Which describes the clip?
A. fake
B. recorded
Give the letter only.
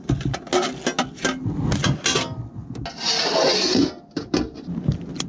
B